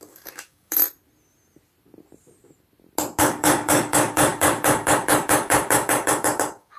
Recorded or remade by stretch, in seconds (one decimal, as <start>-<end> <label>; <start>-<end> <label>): 0.0-0.8 remade; 0.8-3.2 recorded; 3.2-6.8 remade